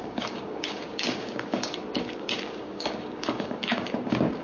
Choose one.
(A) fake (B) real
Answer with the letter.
A